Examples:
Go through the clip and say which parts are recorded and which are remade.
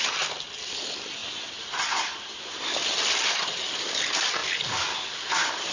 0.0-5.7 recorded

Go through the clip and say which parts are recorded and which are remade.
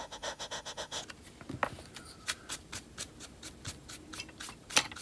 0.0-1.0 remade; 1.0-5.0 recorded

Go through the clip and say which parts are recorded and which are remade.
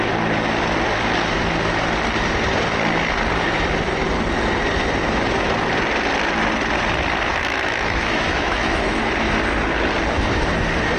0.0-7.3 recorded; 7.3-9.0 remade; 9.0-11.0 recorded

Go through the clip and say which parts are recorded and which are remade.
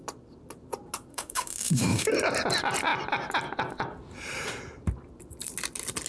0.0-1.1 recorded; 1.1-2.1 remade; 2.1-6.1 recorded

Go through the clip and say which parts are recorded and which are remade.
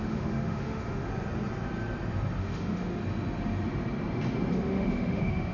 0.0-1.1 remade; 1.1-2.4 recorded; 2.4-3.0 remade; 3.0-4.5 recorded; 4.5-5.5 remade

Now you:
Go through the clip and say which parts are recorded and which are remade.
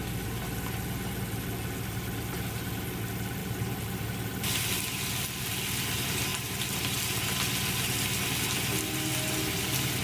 0.0-10.0 recorded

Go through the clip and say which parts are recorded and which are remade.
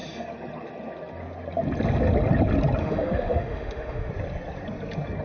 0.0-2.8 recorded; 2.8-4.1 remade; 4.1-5.2 recorded